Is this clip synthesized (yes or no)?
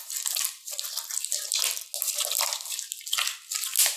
no